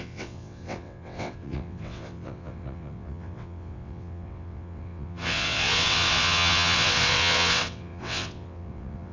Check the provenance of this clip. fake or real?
fake